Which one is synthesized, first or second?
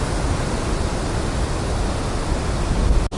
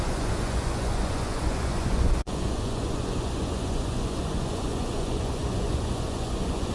second